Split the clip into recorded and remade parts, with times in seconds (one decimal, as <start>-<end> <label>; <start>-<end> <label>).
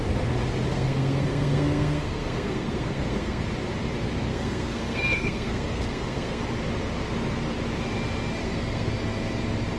0.0-0.7 recorded; 0.7-3.4 remade; 3.4-4.3 recorded; 4.3-6.4 remade; 6.4-8.4 recorded; 8.4-8.9 remade; 8.9-9.8 recorded